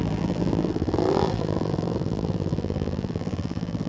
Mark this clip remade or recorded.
remade